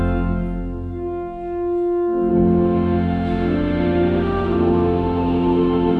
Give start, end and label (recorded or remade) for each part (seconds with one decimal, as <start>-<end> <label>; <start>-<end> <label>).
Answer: 0.0-2.3 recorded; 2.3-6.0 remade